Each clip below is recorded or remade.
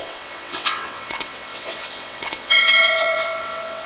remade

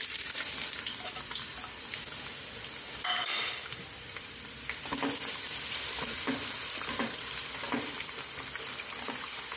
remade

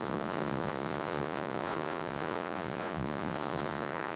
remade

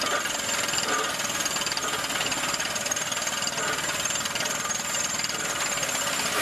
recorded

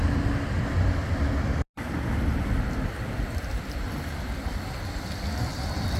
recorded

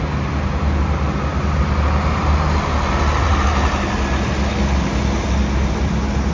recorded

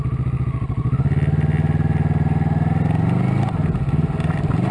recorded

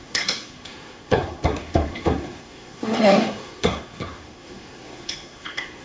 remade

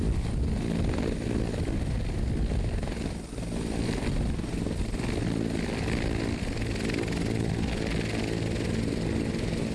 recorded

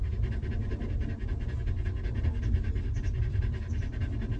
recorded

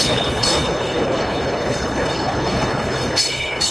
remade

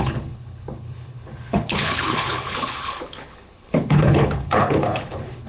remade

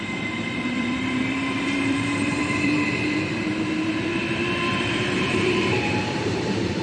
remade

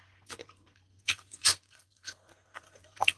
remade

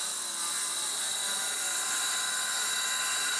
recorded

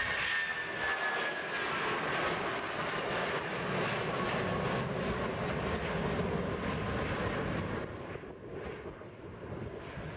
recorded